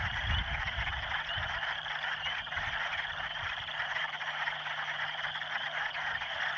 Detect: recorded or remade recorded